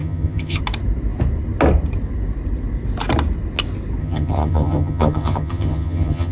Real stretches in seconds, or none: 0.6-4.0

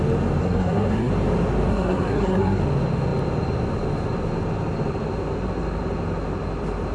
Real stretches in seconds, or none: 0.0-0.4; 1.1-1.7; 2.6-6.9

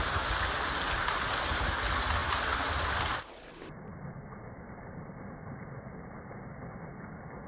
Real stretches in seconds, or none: 0.0-2.2; 5.4-7.5

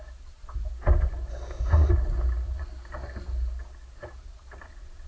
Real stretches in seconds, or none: 0.0-1.3; 1.9-5.1